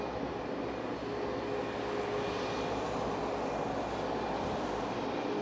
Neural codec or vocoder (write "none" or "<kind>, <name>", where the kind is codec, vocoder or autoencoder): none